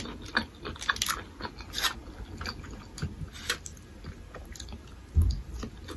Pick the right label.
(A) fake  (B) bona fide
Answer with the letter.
B